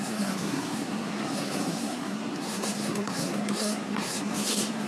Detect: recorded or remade remade